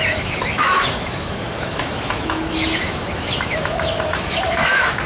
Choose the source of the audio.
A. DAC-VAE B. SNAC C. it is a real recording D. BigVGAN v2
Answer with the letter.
A